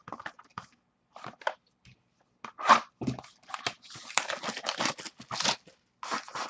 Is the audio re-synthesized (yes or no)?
no